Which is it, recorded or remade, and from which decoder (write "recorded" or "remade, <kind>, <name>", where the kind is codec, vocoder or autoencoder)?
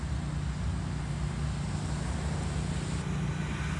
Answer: recorded